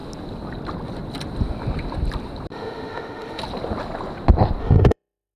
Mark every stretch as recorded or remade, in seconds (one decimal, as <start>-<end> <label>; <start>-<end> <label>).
0.0-2.5 recorded; 2.5-3.4 remade; 3.4-4.6 recorded; 4.6-5.4 remade